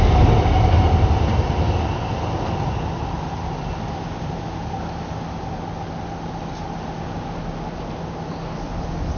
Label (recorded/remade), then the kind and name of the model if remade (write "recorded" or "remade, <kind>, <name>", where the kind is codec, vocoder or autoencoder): recorded